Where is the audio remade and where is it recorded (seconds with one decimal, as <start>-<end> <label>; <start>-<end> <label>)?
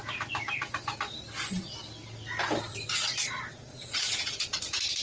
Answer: 0.0-3.0 recorded; 3.0-4.6 remade; 4.6-5.0 recorded